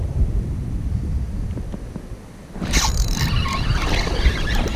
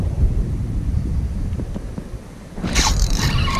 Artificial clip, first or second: second